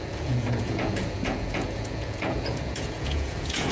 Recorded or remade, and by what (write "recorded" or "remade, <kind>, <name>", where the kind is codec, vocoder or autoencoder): remade, vocoder, Vocos